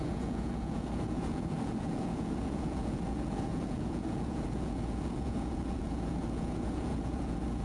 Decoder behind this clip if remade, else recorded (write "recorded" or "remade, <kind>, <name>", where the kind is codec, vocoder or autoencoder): remade, vocoder, Vocos